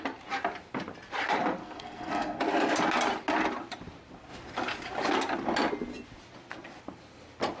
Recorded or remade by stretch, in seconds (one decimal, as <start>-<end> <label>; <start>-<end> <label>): 0.0-1.6 recorded; 1.6-2.4 remade; 2.4-7.6 recorded